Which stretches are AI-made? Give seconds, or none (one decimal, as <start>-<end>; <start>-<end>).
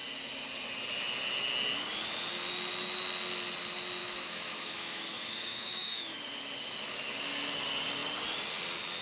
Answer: 4.0-6.2